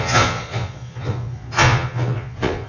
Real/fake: fake